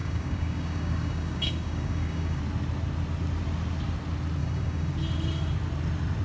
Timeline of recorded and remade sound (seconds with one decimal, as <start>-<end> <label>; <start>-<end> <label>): 0.0-2.4 remade; 2.4-4.4 recorded; 4.4-4.9 remade; 4.9-6.2 recorded